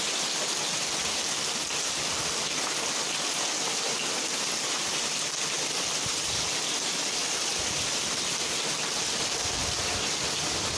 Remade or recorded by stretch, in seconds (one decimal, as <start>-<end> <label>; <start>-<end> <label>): 0.0-10.8 recorded